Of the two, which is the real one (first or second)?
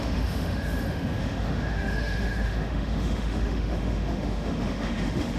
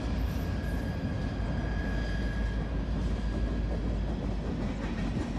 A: second